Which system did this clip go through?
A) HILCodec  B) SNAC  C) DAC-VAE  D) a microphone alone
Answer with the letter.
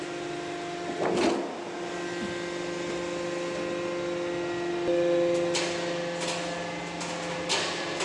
D